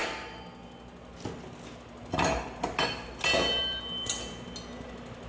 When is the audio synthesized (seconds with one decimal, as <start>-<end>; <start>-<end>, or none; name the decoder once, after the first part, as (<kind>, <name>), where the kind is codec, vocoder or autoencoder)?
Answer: none